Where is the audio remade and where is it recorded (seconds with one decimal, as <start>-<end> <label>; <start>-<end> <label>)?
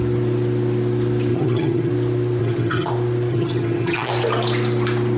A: 0.0-1.3 recorded; 1.3-1.9 remade; 1.9-2.4 recorded; 2.4-2.9 remade; 2.9-3.3 recorded; 3.3-4.1 remade; 4.1-5.2 recorded